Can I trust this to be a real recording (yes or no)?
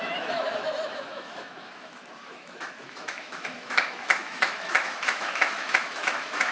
no